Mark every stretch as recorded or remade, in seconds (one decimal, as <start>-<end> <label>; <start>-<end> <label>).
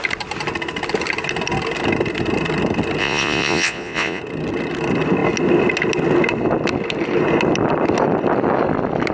0.0-3.0 recorded; 3.0-4.2 remade; 4.2-9.1 recorded